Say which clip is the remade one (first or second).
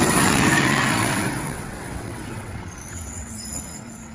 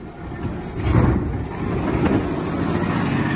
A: first